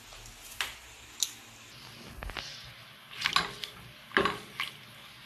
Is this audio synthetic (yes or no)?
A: no